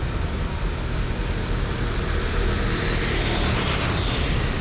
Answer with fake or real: real